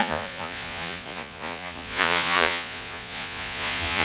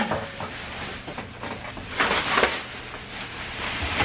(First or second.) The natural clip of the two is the second